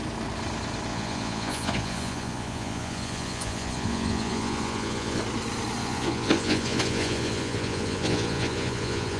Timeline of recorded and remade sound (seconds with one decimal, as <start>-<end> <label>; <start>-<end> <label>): 0.0-0.9 recorded; 0.9-5.2 remade; 5.2-5.8 recorded; 5.8-9.2 remade